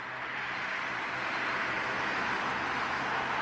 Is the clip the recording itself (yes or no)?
yes